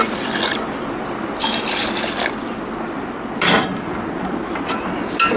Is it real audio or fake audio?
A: real